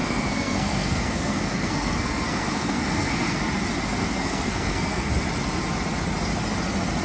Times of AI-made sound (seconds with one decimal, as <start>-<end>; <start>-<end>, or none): 0.0-3.4; 4.0-5.1